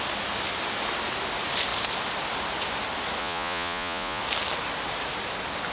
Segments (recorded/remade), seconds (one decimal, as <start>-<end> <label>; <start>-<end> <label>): 0.0-3.2 recorded; 3.2-4.2 remade; 4.2-5.7 recorded